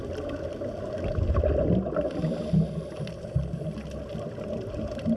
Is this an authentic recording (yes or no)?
yes